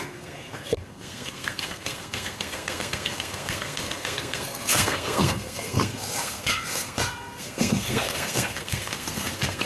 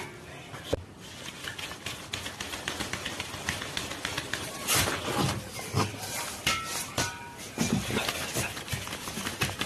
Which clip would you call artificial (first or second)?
first